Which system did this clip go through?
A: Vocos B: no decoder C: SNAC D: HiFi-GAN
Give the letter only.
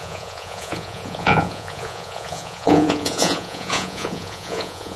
A